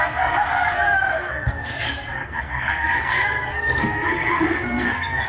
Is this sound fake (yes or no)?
yes